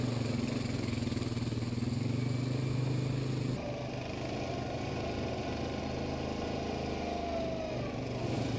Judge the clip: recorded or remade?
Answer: recorded